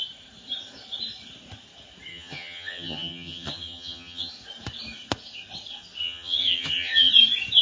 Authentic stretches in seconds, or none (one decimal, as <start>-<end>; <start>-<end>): 0.0-2.1; 4.3-6.0; 7.1-7.6